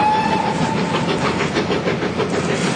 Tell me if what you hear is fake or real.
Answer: real